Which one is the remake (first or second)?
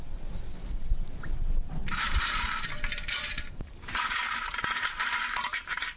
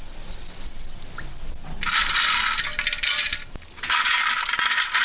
first